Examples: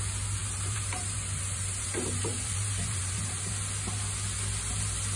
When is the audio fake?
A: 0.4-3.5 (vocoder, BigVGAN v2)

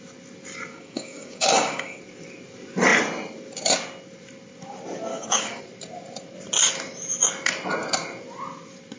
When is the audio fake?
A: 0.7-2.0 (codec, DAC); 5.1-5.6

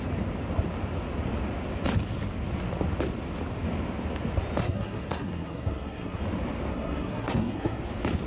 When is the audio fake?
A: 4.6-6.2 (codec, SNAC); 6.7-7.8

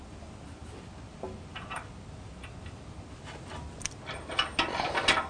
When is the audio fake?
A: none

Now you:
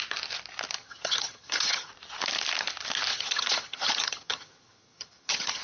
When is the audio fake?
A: 0.8-1.9 (vocoder, HiFi-GAN); 3.1-5.6

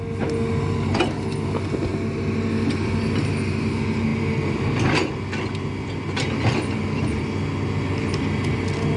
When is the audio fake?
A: none

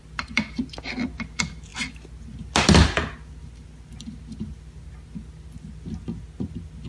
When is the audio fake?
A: none

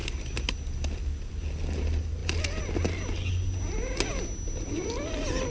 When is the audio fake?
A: none